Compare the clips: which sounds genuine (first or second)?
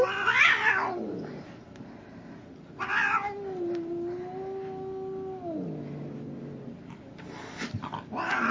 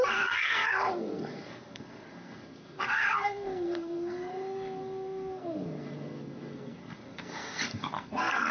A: first